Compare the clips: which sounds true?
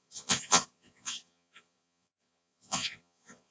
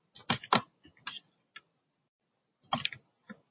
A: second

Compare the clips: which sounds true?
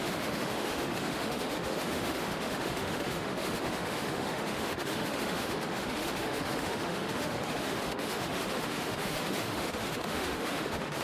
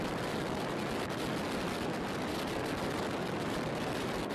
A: second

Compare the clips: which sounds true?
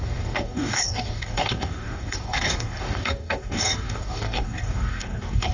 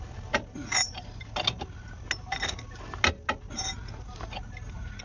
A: second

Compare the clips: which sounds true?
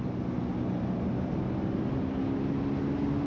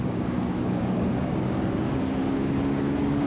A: first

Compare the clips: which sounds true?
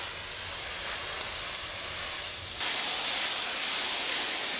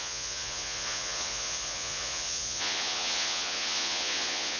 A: first